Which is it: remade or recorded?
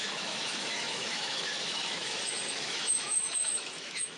remade